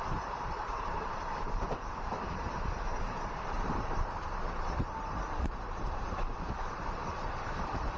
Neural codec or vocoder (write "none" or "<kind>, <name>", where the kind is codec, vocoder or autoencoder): vocoder, BigVGAN v2